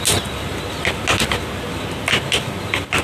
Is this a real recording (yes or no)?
yes